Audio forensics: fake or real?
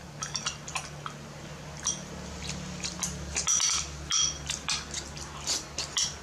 real